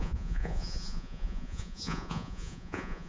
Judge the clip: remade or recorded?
remade